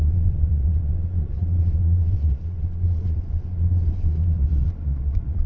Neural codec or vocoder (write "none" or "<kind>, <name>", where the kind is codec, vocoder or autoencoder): vocoder, Vocos